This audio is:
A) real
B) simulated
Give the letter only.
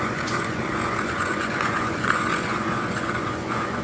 B